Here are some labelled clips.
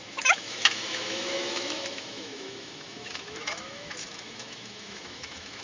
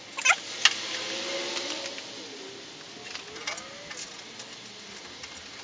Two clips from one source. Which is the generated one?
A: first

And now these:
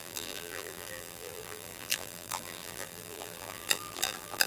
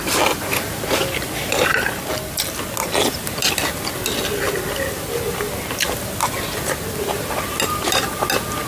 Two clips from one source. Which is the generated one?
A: first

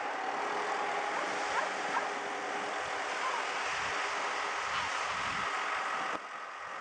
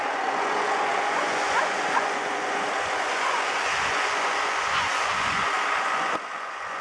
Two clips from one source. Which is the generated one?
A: second